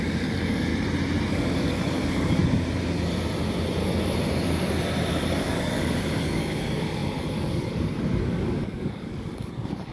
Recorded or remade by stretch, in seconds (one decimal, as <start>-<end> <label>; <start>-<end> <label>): 0.0-0.7 remade; 0.7-1.3 recorded; 1.3-2.4 remade; 2.4-5.1 recorded; 5.1-9.9 remade